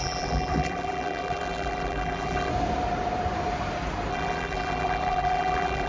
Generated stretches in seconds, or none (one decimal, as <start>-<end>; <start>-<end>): 0.0-2.5; 4.1-5.9